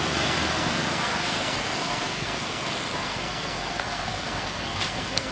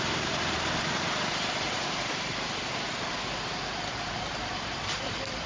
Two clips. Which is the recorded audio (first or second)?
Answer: second